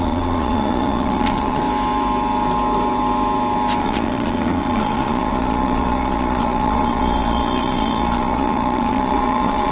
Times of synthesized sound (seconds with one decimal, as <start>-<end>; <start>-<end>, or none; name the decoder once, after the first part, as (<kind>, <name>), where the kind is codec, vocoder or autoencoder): 0.0-1.6 (vocoder, Vocos); 3.8-9.7